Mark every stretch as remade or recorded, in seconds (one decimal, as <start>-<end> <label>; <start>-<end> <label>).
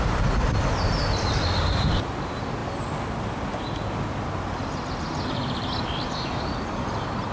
0.0-7.3 recorded